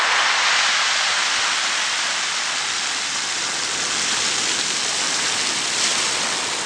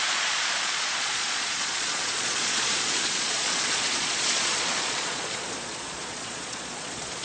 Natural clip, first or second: first